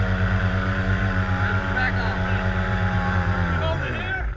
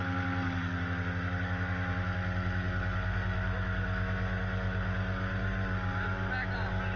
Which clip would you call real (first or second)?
second